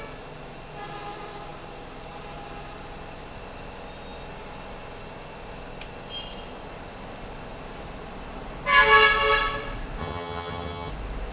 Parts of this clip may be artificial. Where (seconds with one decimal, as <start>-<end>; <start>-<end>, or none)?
10.0-10.9